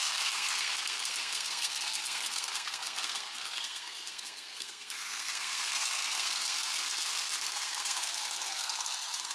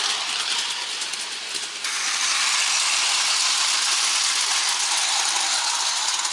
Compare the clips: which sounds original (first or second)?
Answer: second